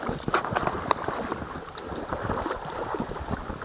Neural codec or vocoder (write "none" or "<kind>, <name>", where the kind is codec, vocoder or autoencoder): none